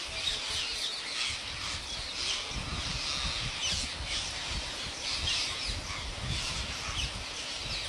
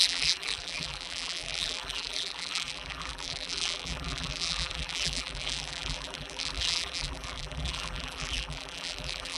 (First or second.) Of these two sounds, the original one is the first